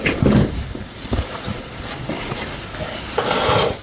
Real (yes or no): yes